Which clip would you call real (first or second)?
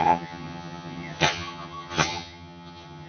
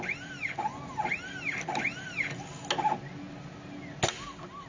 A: second